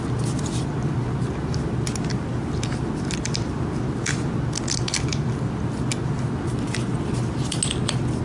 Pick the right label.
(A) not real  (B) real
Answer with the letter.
B